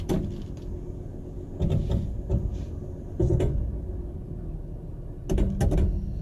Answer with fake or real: real